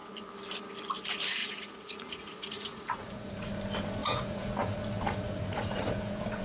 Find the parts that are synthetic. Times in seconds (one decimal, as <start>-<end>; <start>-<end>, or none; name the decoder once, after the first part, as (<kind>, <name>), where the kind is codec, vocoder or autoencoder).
1.4-3.5 (vocoder, Vocos); 4.0-6.4